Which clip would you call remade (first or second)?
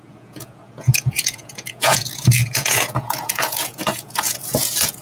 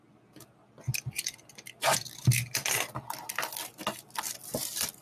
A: first